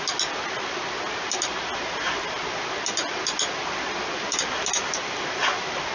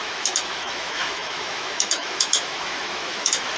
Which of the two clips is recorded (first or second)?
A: first